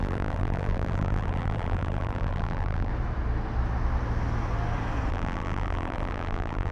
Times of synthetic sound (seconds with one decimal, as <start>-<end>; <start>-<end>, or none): 0.0-2.9; 5.1-6.7